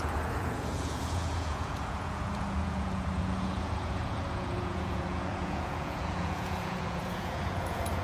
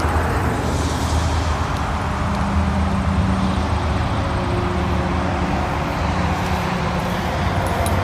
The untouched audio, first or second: second